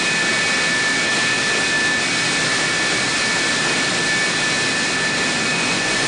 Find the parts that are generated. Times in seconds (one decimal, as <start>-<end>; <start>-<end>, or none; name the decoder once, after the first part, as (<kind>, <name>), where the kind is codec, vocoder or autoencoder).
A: 5.5-6.1 (vocoder, Vocos)